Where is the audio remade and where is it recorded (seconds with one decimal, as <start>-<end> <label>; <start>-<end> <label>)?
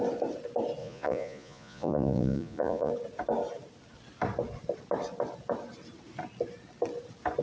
0.0-0.8 recorded; 0.8-2.9 remade; 2.9-7.4 recorded